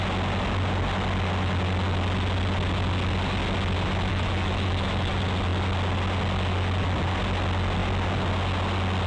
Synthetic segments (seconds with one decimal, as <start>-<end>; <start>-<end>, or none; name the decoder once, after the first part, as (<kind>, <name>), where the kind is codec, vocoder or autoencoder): 4.1-5.1 (autoencoder, DAC-VAE)